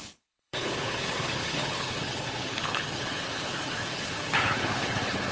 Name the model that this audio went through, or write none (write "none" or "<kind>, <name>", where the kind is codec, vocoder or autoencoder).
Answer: codec, HILCodec